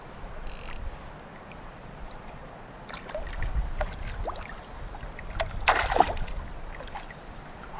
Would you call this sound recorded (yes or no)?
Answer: yes